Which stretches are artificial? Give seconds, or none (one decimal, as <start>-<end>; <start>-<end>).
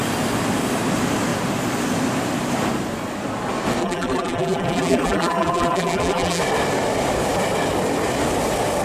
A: 3.8-6.4